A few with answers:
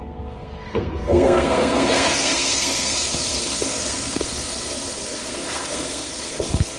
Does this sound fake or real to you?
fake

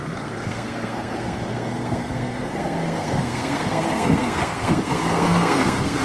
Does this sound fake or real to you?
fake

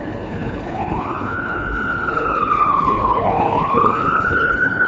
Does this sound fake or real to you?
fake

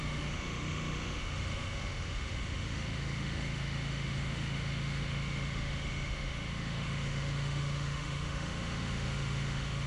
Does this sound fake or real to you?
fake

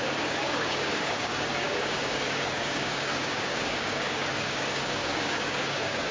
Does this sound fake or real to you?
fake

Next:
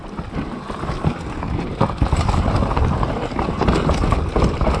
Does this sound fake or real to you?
real